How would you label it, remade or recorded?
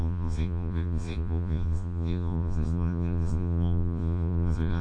remade